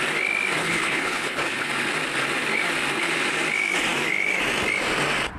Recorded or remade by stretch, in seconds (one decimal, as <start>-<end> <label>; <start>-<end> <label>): 0.0-0.6 recorded; 0.6-1.7 remade; 1.7-5.4 recorded